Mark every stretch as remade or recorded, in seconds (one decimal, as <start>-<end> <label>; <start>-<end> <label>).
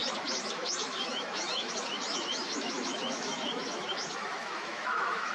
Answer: 0.0-5.3 remade